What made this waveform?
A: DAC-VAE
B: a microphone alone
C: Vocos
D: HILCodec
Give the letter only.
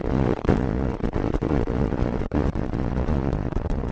C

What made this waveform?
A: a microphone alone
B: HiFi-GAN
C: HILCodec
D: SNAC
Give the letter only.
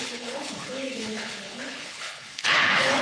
C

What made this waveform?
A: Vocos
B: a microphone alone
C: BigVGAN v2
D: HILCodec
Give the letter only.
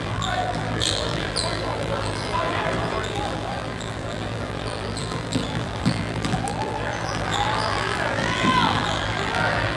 C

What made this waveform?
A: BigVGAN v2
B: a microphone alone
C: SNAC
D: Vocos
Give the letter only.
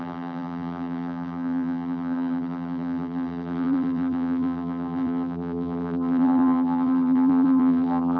A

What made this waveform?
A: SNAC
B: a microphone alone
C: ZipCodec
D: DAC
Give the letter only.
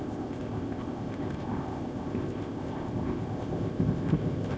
C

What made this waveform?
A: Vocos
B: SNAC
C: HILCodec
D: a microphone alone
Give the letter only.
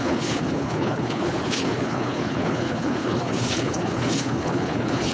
C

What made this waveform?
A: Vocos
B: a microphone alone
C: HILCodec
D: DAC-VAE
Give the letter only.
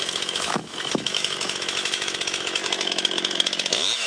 D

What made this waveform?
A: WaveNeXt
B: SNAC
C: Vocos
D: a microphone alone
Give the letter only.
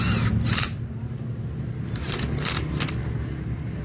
D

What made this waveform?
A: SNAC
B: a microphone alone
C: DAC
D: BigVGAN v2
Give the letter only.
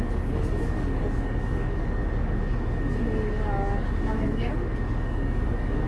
C